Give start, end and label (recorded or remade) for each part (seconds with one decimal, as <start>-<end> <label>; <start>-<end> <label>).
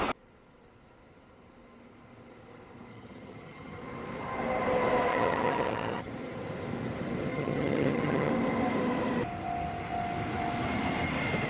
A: 0.0-2.9 recorded; 2.9-3.8 remade; 3.8-5.1 recorded; 5.1-6.1 remade; 6.1-7.3 recorded; 7.3-8.3 remade; 8.3-11.5 recorded